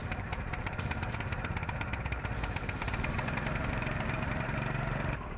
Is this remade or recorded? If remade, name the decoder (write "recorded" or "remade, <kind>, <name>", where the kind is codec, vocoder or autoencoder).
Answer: remade, vocoder, BigVGAN v2